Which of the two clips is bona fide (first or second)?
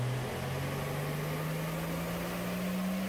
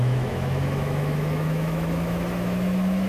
first